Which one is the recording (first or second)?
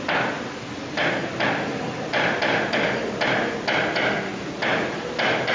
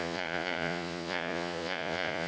first